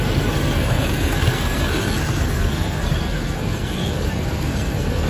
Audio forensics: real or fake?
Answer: fake